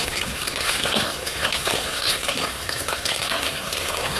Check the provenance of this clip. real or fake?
fake